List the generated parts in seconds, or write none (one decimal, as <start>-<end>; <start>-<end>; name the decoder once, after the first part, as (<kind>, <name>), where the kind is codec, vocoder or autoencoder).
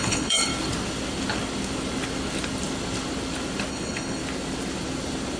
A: 0.0-0.5 (codec, HILCodec); 3.7-4.2